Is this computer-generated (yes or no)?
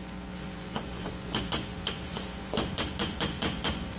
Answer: yes